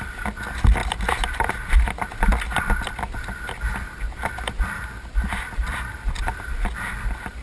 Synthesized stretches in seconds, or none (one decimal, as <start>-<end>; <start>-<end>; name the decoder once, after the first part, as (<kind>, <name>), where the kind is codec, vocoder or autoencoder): 0.8-1.5 (vocoder, BigVGAN v2); 5.7-6.5